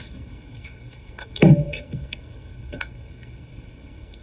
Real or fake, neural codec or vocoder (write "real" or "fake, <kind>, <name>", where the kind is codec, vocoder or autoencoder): fake, codec, SNAC